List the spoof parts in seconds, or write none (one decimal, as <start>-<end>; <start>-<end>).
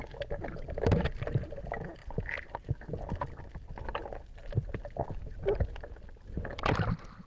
none